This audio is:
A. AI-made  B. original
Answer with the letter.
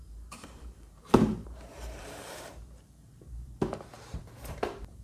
A